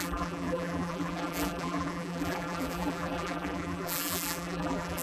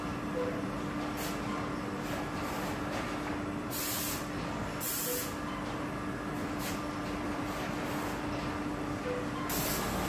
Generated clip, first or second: first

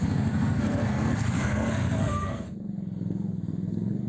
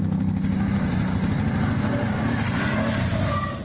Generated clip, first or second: first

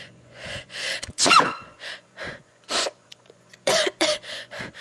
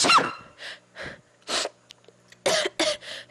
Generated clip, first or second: first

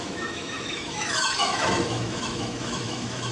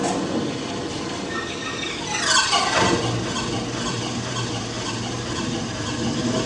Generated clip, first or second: first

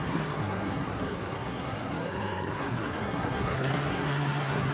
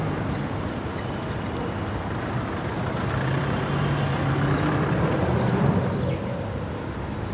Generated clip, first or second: first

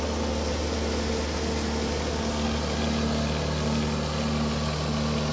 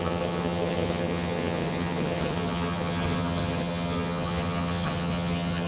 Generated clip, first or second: second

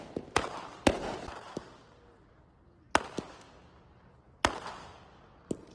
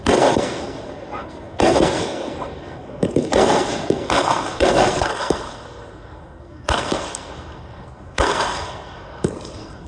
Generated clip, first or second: second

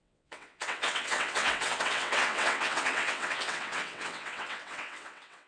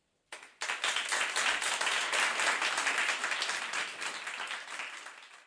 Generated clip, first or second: first